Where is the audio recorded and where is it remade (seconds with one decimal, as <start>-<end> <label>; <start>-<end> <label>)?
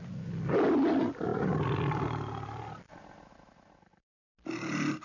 0.0-5.0 recorded